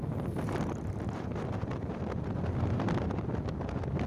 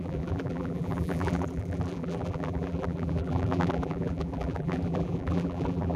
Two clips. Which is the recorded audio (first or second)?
first